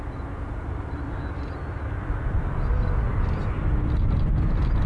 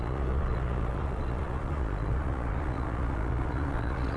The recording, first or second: first